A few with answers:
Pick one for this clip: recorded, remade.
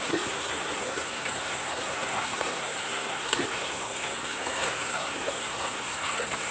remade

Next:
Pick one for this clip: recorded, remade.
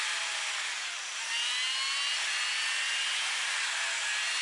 recorded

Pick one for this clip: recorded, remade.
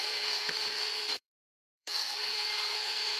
remade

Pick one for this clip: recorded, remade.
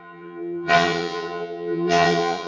remade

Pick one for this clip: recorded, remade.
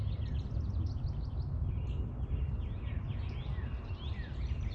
recorded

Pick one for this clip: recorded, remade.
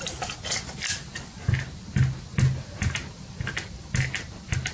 recorded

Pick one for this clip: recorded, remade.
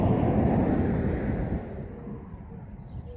recorded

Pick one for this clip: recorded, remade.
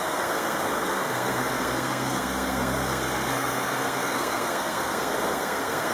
remade